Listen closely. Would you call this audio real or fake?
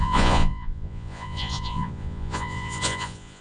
fake